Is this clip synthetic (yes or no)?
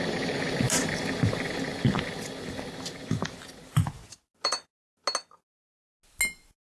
no